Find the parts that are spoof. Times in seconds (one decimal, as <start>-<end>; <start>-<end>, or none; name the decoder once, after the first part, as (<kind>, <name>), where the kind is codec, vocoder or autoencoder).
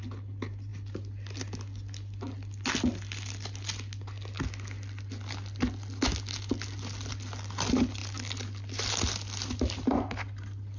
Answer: none